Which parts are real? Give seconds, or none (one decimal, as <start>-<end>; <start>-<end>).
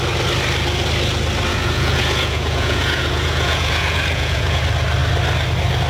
0.0-1.5; 4.6-5.9